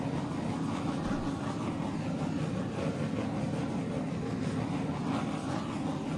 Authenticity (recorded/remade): recorded